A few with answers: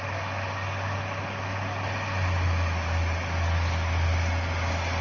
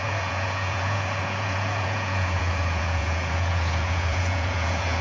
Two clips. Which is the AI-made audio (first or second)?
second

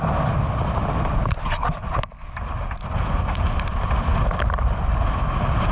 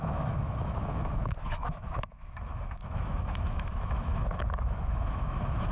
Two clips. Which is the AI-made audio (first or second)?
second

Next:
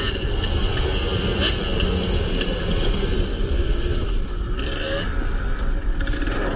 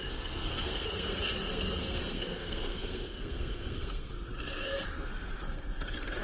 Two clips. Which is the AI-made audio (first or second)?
second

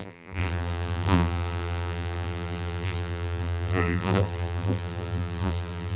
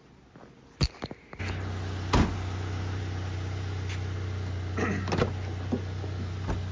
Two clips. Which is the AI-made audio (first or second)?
first